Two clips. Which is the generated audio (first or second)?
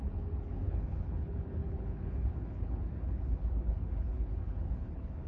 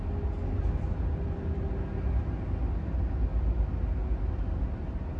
first